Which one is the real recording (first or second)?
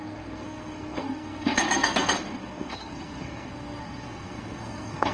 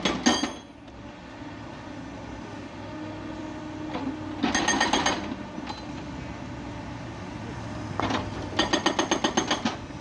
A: second